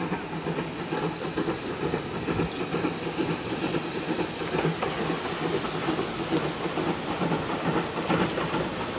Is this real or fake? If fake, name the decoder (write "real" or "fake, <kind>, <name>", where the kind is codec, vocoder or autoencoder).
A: real